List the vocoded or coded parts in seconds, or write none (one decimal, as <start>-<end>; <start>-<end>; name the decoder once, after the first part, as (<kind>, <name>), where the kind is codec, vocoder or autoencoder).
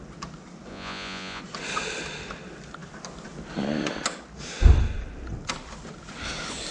0.7-1.4 (vocoder, Vocos)